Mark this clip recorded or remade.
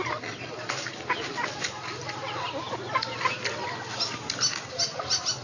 recorded